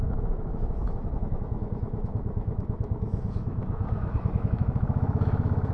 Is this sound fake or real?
fake